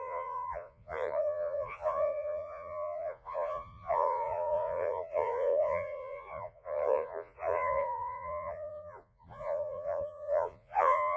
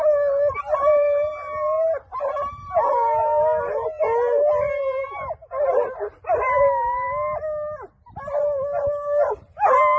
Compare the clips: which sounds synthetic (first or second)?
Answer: first